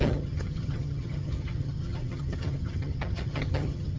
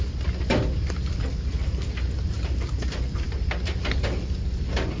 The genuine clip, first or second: second